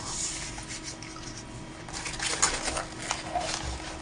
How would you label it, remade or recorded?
recorded